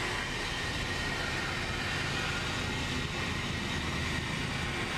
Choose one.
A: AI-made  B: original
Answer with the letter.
B